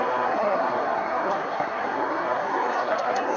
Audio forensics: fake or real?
fake